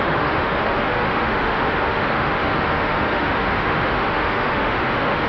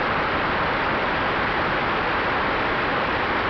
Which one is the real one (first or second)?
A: second